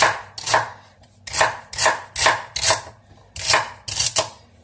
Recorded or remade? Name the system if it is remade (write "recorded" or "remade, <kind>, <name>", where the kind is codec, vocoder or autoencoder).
recorded